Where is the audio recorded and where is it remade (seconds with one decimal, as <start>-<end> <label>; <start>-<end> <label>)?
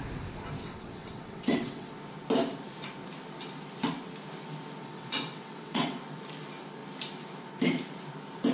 0.0-0.6 recorded; 0.6-1.9 remade; 1.9-4.8 recorded; 4.8-6.0 remade; 6.0-8.5 recorded